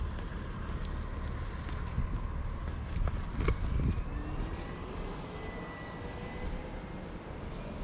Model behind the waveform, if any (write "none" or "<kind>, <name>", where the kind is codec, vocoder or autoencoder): none